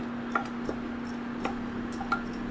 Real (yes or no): yes